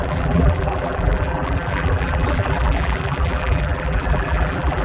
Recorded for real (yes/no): no